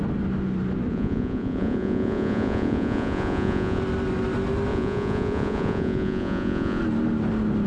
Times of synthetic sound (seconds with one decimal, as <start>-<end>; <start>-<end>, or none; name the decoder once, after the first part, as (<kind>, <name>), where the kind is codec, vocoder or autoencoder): 0.9-3.8 (vocoder, Vocos); 4.7-6.8